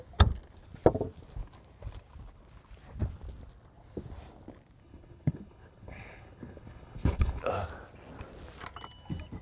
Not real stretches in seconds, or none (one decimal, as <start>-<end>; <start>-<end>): 4.8-7.4